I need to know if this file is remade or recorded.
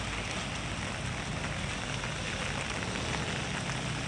recorded